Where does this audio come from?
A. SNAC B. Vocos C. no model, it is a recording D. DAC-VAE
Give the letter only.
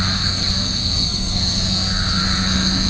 A